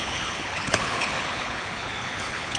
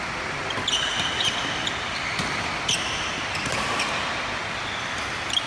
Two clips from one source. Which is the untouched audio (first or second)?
second